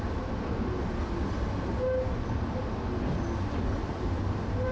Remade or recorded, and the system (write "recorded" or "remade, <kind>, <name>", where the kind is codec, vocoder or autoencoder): recorded